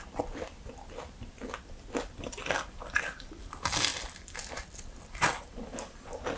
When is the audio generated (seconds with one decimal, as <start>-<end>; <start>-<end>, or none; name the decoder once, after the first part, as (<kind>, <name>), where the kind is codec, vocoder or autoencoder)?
none

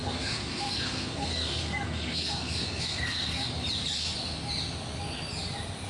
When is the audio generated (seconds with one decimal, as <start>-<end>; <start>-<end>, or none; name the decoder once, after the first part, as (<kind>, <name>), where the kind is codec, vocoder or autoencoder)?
0.0-3.5 (codec, SNAC)

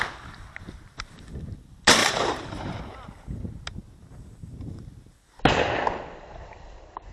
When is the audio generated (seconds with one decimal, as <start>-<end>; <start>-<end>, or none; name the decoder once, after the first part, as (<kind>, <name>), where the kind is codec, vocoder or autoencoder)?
2.0-2.8 (vocoder, BigVGAN v2)